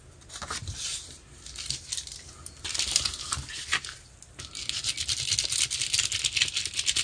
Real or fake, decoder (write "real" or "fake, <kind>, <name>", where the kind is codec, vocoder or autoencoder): real